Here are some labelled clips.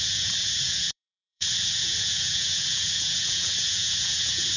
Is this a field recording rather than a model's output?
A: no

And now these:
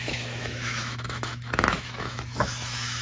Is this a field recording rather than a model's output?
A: no